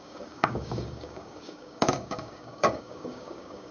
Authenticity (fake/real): fake